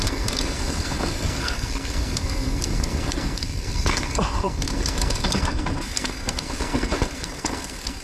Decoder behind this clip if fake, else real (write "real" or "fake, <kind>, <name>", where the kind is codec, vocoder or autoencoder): fake, codec, SNAC